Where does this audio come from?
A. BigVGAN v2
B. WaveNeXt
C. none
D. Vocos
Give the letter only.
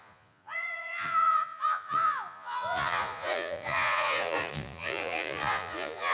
D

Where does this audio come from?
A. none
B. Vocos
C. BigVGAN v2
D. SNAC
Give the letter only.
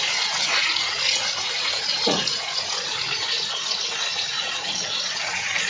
B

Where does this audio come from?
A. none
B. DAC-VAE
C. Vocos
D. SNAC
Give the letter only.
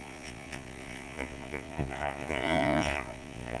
C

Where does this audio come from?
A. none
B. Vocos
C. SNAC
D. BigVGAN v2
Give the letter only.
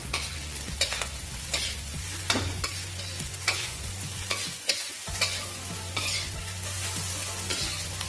B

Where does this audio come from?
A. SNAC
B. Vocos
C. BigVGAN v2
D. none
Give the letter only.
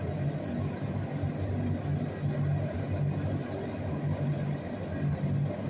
D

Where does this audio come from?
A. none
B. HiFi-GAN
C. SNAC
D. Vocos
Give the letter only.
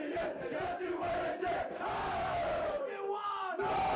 A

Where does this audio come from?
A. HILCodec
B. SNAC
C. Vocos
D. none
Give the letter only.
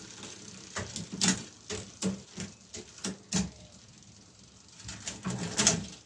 D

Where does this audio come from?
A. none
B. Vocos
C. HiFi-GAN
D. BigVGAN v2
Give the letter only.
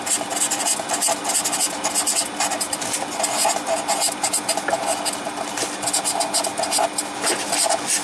A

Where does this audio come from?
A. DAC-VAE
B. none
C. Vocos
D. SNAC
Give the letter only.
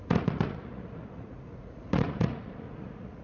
C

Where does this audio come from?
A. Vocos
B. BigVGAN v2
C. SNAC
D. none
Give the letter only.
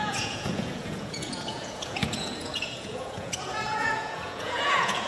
A